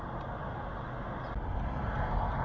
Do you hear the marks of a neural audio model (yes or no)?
no